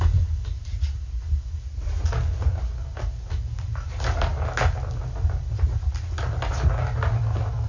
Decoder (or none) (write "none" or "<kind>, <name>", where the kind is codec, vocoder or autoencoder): none